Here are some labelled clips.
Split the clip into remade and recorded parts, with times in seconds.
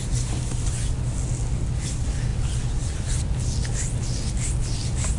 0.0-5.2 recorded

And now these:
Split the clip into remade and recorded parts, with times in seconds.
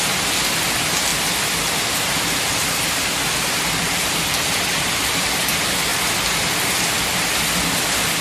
0.0-8.2 recorded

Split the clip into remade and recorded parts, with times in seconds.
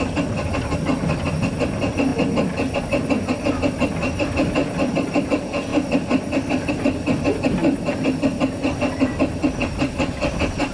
0.0-4.6 recorded; 4.6-5.3 remade; 5.3-10.7 recorded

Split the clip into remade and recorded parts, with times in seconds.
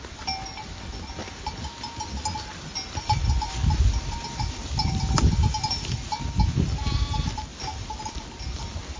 0.0-9.0 recorded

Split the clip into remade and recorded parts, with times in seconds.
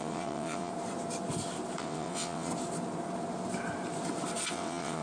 0.0-0.7 remade; 0.7-1.8 recorded; 1.8-2.5 remade; 2.5-4.5 recorded; 4.5-5.0 remade